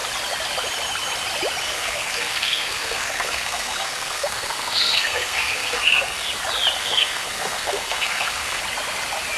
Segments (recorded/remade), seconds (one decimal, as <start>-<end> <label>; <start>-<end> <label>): 0.0-1.6 recorded; 1.6-6.3 remade; 6.3-6.8 recorded; 6.8-8.6 remade; 8.6-9.4 recorded